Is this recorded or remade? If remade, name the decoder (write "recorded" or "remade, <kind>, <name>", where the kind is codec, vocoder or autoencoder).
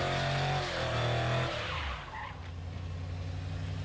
recorded